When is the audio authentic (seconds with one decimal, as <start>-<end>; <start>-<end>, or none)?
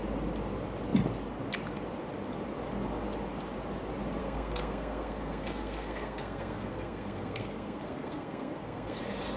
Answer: 0.0-4.2; 9.0-9.4